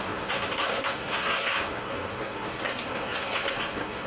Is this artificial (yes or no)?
yes